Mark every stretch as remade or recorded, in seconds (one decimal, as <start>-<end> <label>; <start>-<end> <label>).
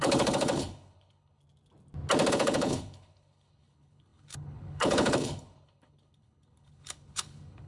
0.0-1.4 remade; 1.4-2.3 recorded; 2.3-7.7 remade